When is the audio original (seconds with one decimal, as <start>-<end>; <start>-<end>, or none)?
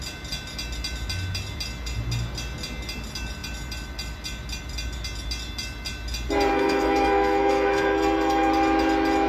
0.0-6.5; 8.5-9.3